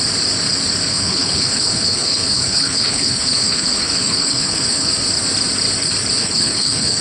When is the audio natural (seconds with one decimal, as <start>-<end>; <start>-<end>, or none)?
0.0-0.9; 4.9-6.2